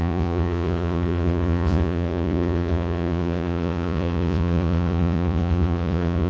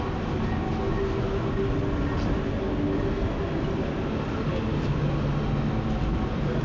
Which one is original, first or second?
second